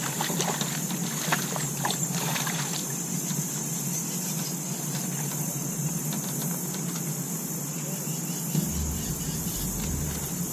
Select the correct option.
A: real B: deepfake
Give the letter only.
A